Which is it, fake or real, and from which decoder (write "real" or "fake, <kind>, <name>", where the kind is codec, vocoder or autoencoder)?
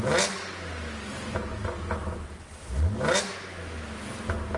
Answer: real